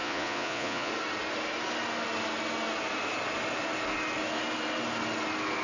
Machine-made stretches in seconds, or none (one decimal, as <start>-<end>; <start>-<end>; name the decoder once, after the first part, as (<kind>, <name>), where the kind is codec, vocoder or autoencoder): 0.0-0.9 (vocoder, Vocos)